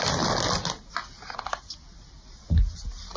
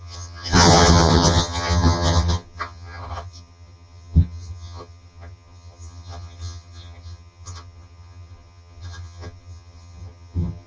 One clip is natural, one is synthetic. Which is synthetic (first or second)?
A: second